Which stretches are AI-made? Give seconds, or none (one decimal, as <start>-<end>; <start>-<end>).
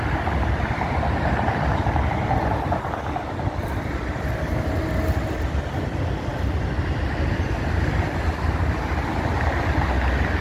none